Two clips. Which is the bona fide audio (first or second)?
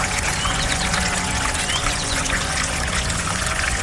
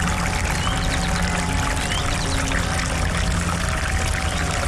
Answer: second